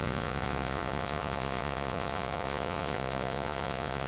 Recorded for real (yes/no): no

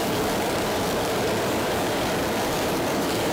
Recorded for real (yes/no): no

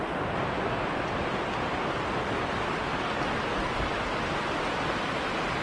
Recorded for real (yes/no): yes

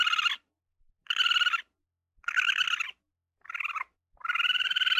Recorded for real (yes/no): yes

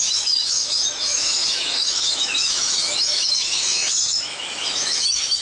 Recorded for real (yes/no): no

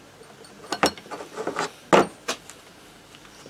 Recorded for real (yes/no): yes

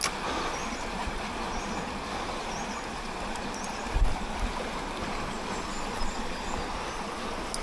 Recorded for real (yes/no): yes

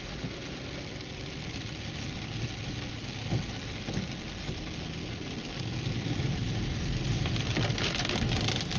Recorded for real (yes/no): yes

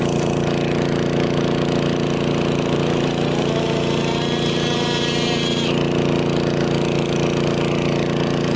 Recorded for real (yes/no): yes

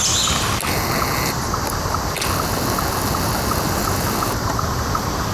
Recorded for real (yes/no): yes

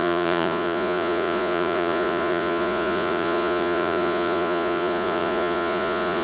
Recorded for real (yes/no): no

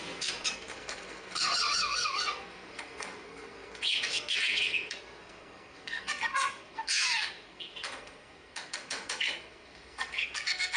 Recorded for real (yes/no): no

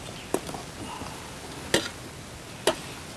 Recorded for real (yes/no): yes